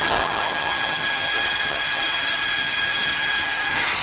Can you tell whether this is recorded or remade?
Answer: remade